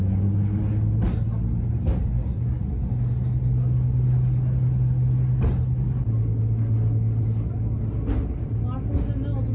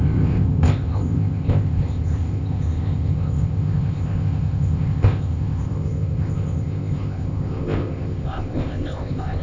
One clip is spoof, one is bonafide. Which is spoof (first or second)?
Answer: second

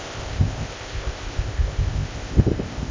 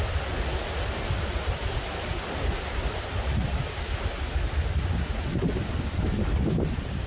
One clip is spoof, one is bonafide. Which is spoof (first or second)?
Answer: first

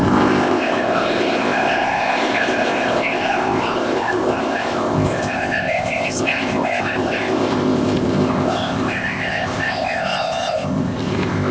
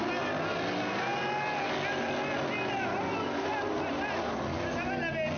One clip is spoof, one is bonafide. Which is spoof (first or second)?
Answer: first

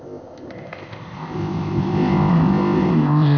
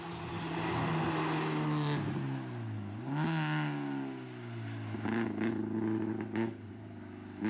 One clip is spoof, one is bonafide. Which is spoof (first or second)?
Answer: first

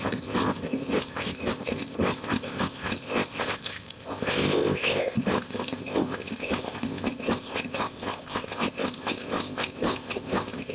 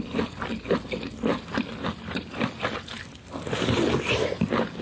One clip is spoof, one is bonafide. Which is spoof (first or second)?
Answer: first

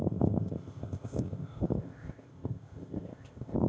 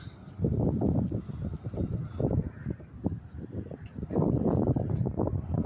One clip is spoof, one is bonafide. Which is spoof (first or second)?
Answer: first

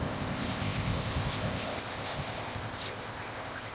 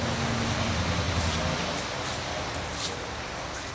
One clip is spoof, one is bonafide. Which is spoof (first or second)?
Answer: first